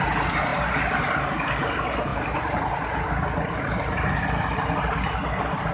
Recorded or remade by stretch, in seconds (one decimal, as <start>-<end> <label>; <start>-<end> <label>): 0.0-5.7 recorded